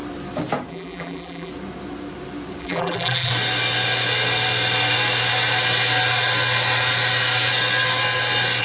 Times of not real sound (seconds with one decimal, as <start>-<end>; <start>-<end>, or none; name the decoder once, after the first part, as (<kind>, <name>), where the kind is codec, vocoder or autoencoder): 0.7-1.5 (vocoder, BigVGAN v2); 2.6-3.3